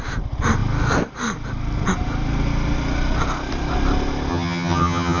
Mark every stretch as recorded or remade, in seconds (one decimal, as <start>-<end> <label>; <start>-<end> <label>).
0.0-4.3 recorded; 4.3-5.2 remade

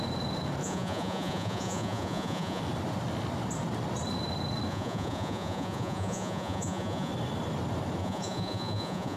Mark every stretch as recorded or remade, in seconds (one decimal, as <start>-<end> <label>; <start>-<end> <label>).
0.0-0.6 recorded; 0.6-2.6 remade; 2.6-4.7 recorded; 4.7-7.1 remade; 7.1-8.0 recorded; 8.0-9.2 remade

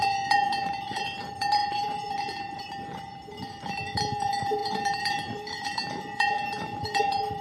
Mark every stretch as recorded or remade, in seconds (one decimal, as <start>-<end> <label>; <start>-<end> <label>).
0.0-7.4 remade